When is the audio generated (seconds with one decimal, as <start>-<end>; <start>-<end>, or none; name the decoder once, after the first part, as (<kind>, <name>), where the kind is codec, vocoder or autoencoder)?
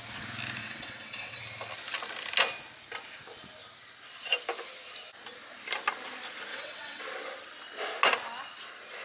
0.6-1.4 (vocoder, WaveNeXt); 6.5-7.0